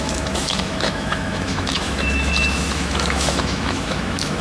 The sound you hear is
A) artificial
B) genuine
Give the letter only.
A